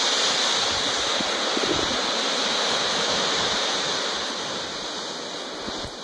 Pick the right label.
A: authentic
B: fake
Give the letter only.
A